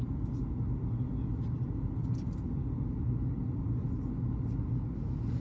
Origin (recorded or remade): recorded